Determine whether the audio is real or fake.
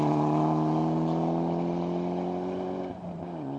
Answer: real